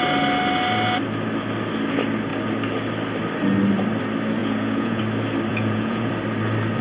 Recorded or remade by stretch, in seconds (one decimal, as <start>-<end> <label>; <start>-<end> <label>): 0.0-4.4 recorded; 4.4-5.0 remade; 5.0-5.5 recorded; 5.5-6.1 remade; 6.1-6.8 recorded